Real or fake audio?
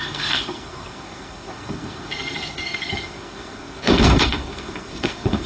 fake